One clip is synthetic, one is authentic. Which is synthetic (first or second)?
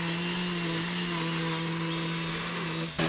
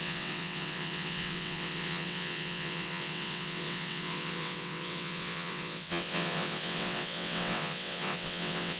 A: second